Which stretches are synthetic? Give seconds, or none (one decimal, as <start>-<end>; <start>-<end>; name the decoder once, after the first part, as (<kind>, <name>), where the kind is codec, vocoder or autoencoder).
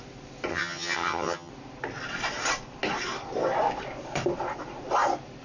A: 0.5-1.5 (vocoder, HiFi-GAN)